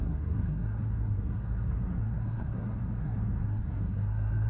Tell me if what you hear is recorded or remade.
remade